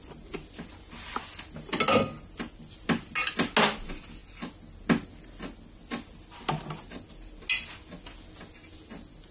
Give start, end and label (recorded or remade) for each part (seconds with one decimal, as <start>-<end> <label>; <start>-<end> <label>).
0.0-9.3 recorded

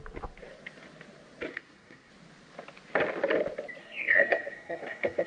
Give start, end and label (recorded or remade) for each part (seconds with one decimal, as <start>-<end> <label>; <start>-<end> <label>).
0.0-1.5 recorded; 1.5-2.1 remade; 2.1-3.8 recorded; 3.8-5.3 remade

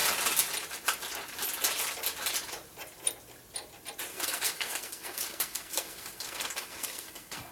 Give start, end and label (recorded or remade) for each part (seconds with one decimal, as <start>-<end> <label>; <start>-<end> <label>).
0.0-4.1 recorded; 4.1-7.5 remade

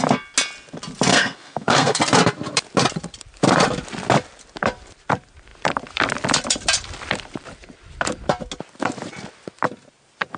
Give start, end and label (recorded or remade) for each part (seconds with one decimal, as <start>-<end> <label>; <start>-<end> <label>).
0.0-1.1 recorded; 1.1-2.0 remade; 2.0-10.4 recorded

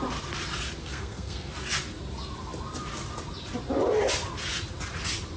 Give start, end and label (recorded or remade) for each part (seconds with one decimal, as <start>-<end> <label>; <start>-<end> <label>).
0.0-0.8 recorded; 0.8-1.5 remade; 1.5-5.4 recorded

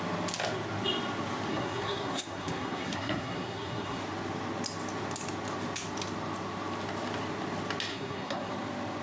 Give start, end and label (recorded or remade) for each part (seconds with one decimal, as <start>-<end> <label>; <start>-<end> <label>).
0.0-1.5 recorded; 1.5-4.0 remade; 4.0-7.9 recorded; 7.9-8.5 remade; 8.5-9.0 recorded